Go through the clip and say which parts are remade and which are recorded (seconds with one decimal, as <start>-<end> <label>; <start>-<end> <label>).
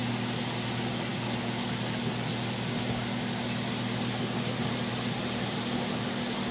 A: 0.0-6.5 recorded